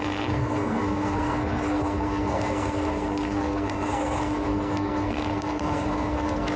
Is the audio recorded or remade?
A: remade